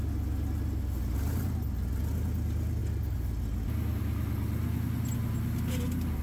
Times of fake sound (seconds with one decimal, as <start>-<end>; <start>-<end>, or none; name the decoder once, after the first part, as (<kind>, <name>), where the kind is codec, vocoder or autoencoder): none